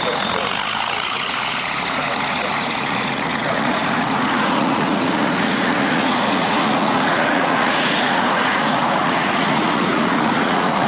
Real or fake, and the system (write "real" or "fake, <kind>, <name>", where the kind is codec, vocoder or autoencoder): fake, vocoder, Vocos